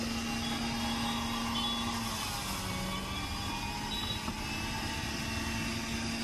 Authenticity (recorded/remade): recorded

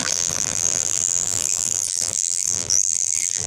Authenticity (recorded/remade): remade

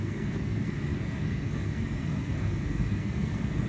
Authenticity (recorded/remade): remade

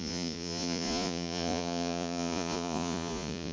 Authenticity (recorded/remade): remade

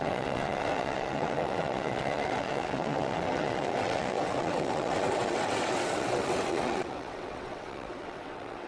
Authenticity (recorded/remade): remade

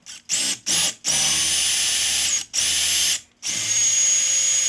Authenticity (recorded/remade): recorded